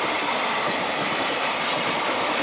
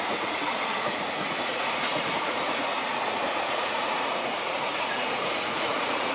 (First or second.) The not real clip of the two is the second